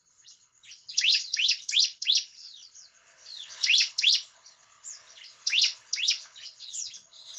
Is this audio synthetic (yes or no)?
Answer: yes